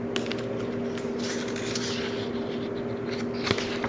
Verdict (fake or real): real